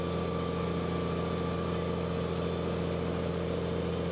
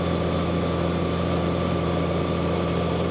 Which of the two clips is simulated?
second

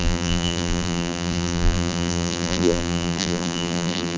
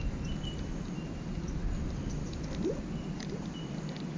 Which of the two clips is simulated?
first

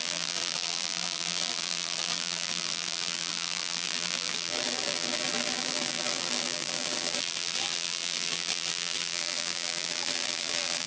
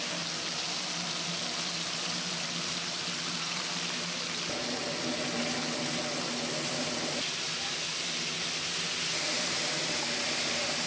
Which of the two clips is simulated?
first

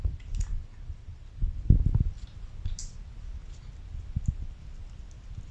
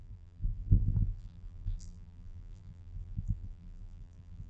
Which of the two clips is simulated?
second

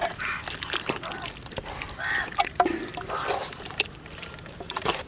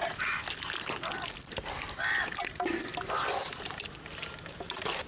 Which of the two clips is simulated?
first